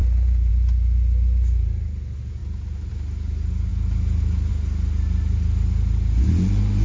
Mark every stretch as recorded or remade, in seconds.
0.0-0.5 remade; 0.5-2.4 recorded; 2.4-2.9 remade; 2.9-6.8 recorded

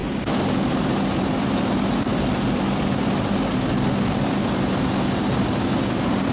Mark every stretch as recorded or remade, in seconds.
0.0-6.3 recorded

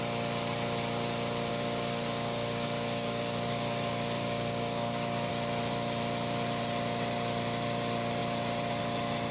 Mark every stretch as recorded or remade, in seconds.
0.0-1.5 recorded; 1.5-5.3 remade; 5.3-9.3 recorded

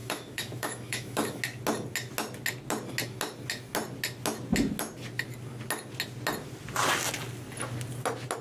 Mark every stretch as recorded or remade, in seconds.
0.0-1.4 remade; 1.4-8.4 recorded

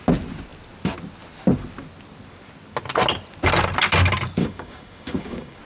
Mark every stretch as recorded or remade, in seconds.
0.0-4.4 recorded; 4.4-5.6 remade

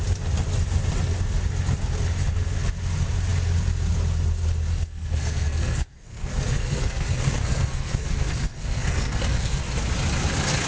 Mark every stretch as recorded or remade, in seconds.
0.0-4.7 recorded; 4.7-9.6 remade; 9.6-10.7 recorded

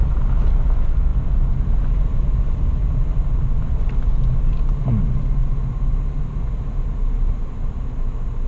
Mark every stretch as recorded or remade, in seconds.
0.0-8.5 recorded

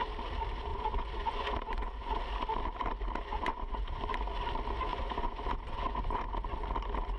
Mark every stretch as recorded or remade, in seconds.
0.0-0.7 recorded; 0.7-2.2 remade; 2.2-3.3 recorded; 3.3-4.0 remade; 4.0-4.9 recorded; 4.9-6.2 remade; 6.2-7.2 recorded